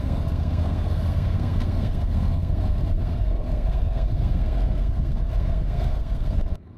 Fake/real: fake